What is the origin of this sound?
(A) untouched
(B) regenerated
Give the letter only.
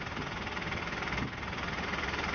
A